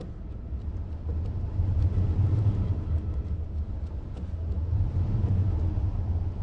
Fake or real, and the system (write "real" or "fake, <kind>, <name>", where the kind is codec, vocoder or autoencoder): real